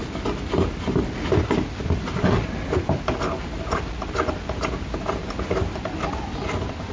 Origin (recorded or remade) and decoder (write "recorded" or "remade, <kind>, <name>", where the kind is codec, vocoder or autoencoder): recorded